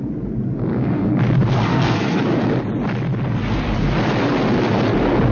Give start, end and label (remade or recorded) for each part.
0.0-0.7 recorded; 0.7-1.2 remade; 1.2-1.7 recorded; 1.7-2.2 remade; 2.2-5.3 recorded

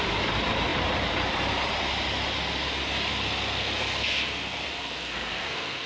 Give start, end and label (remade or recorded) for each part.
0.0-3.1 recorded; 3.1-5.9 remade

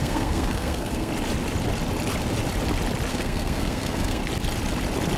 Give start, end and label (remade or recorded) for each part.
0.0-1.1 remade; 1.1-3.1 recorded; 3.1-4.2 remade; 4.2-5.2 recorded